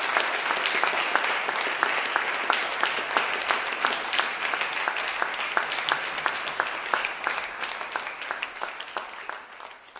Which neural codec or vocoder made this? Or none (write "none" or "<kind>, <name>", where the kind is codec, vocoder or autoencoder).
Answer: none